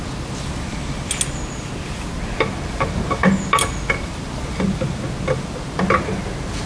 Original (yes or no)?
yes